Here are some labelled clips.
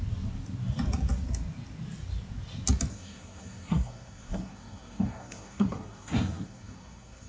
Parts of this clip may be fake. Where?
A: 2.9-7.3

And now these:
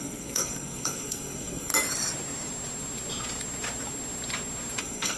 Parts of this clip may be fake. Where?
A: 0.0-1.7; 4.8-5.2

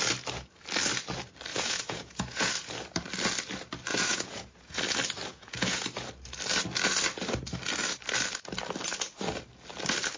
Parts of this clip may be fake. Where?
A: 1.5-2.5; 3.9-4.8; 5.3-5.9

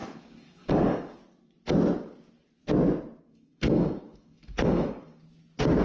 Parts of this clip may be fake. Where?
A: 0.0-1.2; 3.2-5.2

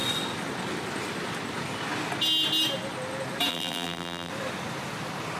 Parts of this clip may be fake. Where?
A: 3.5-4.3

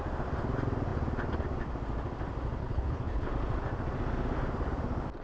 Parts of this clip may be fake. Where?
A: 2.6-3.3

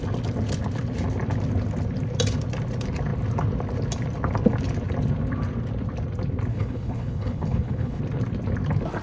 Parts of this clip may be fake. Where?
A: 6.5-8.0